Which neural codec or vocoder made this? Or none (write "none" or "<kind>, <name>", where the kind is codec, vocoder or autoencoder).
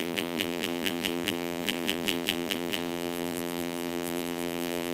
vocoder, BigVGAN v2